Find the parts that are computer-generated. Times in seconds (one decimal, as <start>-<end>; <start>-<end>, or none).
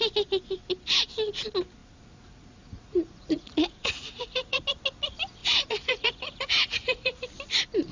1.8-4.6; 5.4-7.2